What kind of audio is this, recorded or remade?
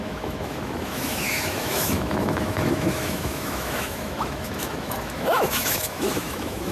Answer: remade